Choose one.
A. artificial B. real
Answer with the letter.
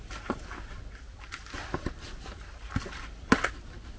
B